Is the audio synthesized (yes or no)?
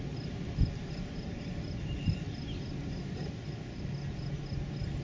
no